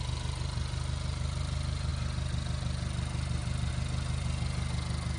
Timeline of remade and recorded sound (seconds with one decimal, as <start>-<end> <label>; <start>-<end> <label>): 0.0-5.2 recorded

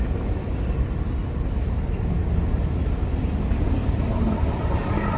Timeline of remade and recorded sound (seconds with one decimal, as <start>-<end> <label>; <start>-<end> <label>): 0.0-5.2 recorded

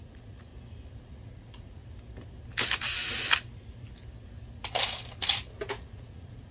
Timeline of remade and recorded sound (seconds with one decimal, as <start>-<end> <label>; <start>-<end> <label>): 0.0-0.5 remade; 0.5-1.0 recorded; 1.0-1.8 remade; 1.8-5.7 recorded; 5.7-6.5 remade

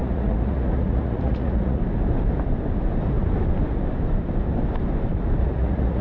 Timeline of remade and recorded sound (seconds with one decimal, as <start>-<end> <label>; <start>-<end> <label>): 0.0-1.8 remade; 1.8-5.4 recorded; 5.4-6.0 remade

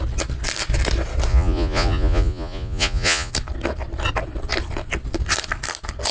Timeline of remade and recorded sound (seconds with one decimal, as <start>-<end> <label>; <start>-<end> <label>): 0.0-1.3 recorded; 1.3-3.3 remade; 3.3-6.1 recorded